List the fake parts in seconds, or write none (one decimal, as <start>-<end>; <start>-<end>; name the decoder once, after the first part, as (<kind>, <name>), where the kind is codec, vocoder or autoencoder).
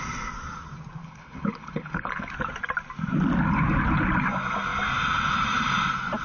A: 1.0-2.3 (codec, HILCodec)